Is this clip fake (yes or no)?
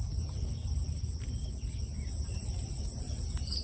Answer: no